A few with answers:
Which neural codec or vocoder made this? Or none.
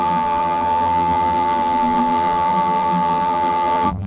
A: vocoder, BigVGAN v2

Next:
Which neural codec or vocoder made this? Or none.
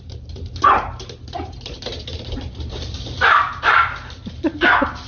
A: vocoder, BigVGAN v2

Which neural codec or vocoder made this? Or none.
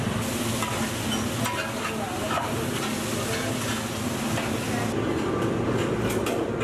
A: none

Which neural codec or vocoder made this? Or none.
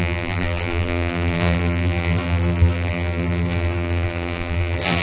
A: vocoder, BigVGAN v2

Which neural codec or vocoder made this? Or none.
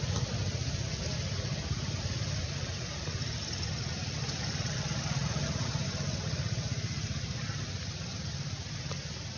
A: none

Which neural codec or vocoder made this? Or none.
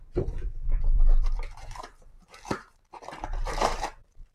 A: vocoder, BigVGAN v2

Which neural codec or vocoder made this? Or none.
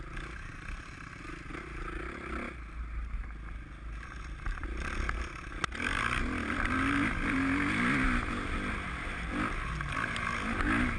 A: none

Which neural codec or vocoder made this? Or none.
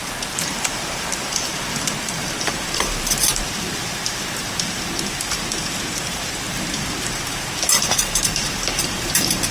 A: vocoder, BigVGAN v2